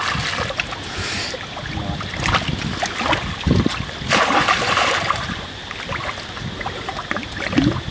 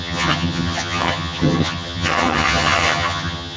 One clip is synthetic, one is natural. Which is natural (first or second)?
first